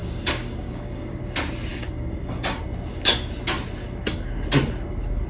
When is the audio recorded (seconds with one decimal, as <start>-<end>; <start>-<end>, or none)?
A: 1.2-1.7; 2.6-5.3

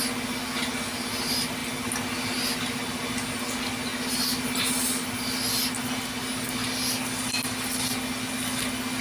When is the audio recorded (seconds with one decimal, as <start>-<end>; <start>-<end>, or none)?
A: 0.0-9.0

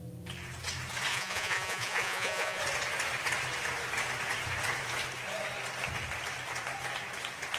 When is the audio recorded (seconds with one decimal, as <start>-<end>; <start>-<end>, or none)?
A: 0.0-1.1; 2.6-7.6

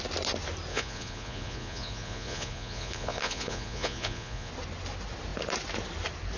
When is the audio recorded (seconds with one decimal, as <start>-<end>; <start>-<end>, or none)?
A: 0.0-0.7; 4.5-6.4

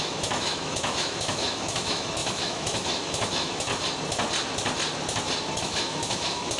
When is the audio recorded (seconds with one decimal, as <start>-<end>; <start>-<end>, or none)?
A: 3.7-5.6

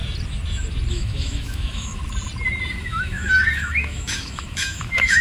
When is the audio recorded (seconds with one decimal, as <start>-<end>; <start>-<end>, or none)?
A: 0.0-0.9; 2.0-2.8